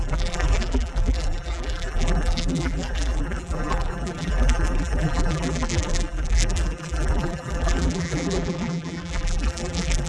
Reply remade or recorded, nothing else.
remade